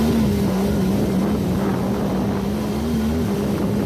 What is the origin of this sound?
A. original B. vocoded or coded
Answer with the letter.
A